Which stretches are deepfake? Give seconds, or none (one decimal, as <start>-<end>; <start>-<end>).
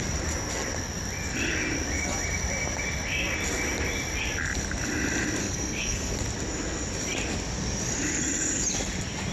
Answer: 5.4-6.1